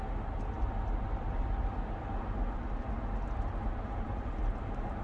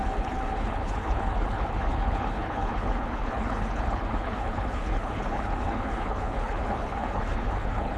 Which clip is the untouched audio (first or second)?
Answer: first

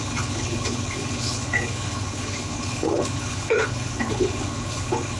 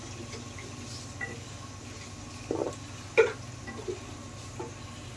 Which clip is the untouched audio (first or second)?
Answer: second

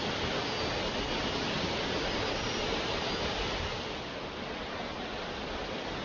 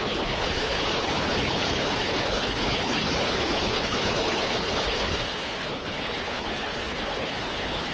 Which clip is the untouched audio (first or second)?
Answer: first